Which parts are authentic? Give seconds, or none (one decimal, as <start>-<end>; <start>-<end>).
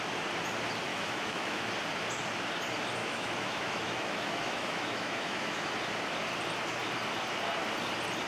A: 0.0-0.9; 1.7-3.0; 5.7-8.3